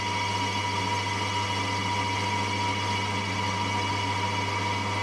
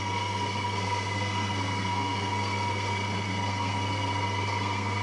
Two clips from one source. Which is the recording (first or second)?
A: first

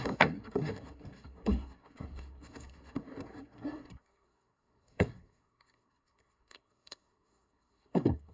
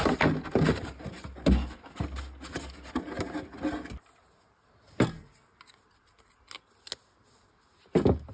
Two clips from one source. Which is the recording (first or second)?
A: second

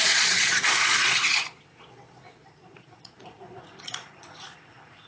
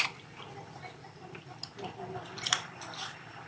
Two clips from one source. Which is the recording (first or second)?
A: second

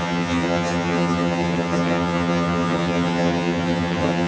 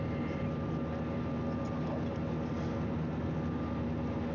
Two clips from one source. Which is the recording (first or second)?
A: second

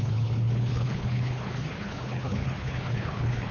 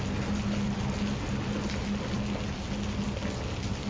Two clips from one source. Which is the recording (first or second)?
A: second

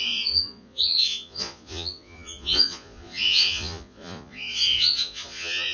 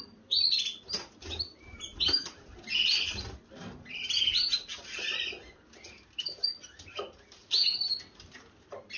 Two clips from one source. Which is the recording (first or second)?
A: second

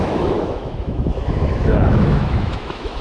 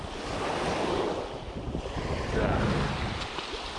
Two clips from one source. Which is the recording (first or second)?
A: second